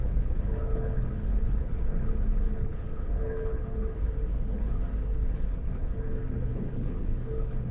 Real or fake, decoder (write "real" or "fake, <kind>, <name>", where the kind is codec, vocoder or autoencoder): fake, codec, HILCodec